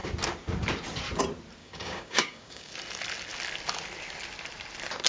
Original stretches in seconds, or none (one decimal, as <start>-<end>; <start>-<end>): 0.0-1.6; 2.7-5.1